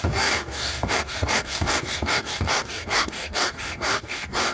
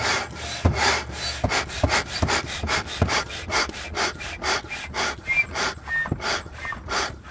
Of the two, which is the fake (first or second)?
first